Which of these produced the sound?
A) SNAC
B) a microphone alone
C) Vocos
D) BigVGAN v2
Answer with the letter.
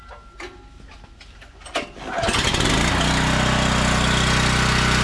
B